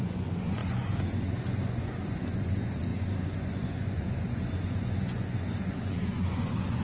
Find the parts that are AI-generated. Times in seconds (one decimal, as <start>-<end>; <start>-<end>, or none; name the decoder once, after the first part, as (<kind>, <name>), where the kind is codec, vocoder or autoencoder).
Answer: 0.0-6.8 (vocoder, Vocos)